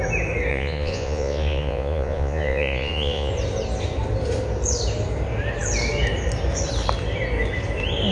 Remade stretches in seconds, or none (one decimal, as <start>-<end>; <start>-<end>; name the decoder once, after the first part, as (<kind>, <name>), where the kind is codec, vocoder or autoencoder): 0.5-3.3 (vocoder, Vocos)